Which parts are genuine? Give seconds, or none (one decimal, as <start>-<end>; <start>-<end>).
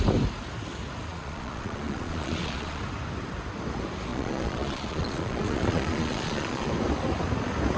0.0-1.1; 2.8-4.1; 6.7-7.8